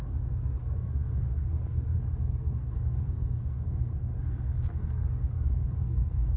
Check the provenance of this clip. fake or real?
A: fake